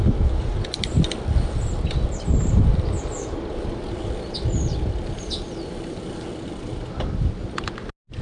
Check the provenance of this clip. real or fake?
real